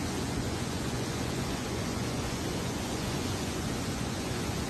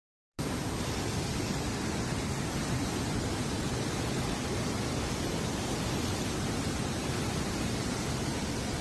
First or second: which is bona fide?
second